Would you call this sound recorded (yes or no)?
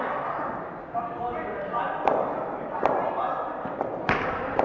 yes